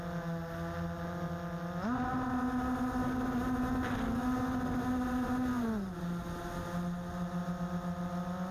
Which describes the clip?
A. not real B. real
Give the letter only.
B